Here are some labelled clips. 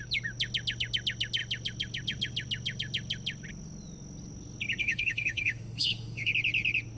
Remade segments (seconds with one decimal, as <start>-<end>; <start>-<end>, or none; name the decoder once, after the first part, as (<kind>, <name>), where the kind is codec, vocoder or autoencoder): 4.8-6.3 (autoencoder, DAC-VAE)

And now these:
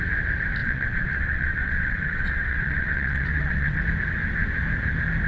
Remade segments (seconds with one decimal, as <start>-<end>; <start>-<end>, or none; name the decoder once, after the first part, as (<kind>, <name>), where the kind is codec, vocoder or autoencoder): 0.6-3.8 (vocoder, WaveNeXt)

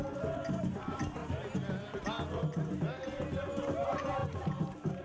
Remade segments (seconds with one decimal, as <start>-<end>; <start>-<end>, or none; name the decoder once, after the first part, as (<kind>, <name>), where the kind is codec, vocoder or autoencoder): none

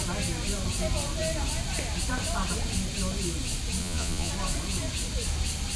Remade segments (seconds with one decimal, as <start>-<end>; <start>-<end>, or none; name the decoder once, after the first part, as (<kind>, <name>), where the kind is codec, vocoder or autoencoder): 3.8-4.3 (vocoder, Vocos)